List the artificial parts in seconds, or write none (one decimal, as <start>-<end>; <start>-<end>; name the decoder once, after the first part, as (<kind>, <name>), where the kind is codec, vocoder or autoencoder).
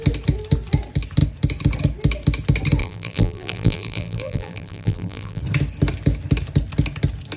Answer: 2.8-5.4 (vocoder, BigVGAN v2)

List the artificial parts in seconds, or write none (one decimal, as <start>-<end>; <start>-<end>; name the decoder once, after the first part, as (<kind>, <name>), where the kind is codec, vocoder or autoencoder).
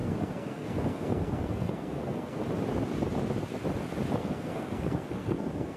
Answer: 0.0-2.4 (codec, SNAC); 4.2-5.8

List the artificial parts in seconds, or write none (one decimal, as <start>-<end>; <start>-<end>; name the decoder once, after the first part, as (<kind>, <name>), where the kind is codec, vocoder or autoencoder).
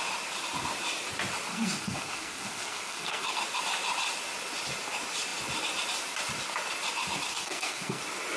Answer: 1.5-3.4 (codec, SNAC); 7.3-8.0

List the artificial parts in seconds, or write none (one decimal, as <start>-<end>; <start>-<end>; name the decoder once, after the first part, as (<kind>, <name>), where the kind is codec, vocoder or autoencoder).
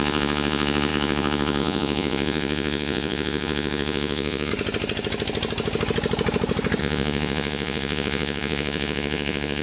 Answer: 0.0-4.5 (vocoder, Vocos); 6.8-9.6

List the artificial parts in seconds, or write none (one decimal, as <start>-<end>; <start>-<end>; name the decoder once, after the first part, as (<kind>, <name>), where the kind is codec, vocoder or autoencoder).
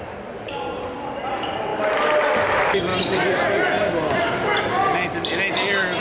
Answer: none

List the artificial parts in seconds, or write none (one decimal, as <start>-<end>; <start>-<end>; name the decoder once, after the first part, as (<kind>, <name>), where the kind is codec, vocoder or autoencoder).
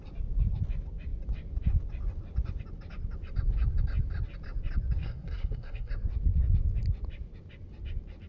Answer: 5.0-5.9 (codec, SNAC)